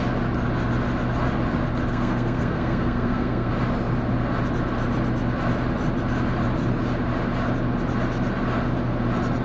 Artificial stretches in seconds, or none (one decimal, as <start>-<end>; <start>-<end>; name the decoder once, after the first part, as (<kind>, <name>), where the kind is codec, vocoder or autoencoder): 1.9-3.5 (codec, SNAC)